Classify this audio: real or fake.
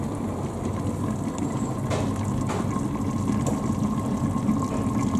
real